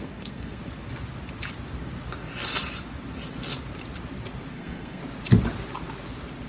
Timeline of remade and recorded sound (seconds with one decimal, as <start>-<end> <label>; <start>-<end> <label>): 0.0-0.6 remade; 0.6-4.5 recorded; 4.5-5.0 remade; 5.0-6.5 recorded